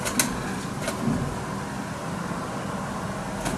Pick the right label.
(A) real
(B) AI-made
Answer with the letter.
A